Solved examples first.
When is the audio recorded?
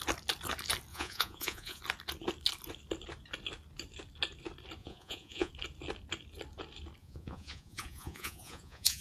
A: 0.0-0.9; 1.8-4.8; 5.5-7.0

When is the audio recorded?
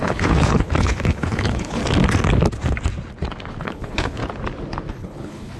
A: 1.8-3.6; 4.2-4.9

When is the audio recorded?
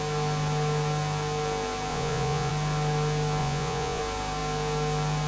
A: 0.0-1.9; 2.5-3.4; 4.0-5.3